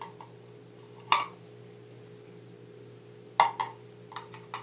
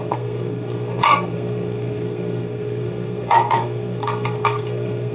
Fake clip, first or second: second